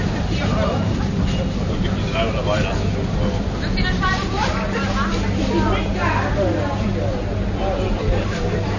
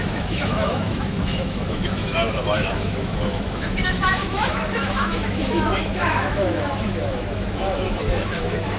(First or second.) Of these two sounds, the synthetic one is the second